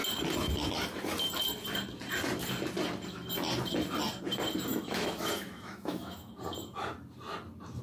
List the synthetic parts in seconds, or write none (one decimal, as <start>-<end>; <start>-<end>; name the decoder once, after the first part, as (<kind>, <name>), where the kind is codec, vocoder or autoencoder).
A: 4.7-6.3 (autoencoder, DAC-VAE)